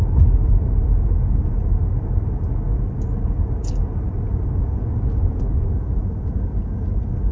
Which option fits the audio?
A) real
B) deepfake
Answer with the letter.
A